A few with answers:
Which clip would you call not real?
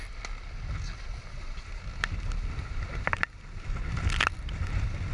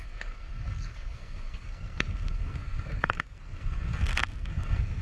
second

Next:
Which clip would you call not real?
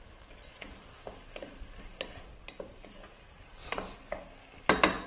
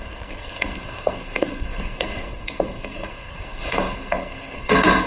second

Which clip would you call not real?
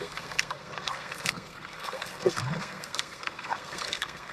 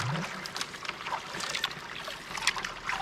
first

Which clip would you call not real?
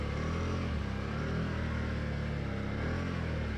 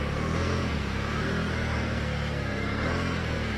second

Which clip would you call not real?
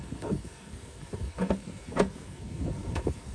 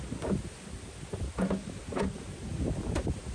first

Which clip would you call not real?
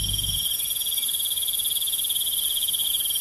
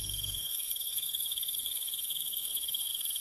second